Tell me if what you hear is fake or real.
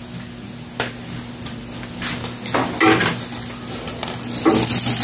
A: real